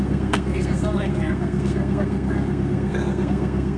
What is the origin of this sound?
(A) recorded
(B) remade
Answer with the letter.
B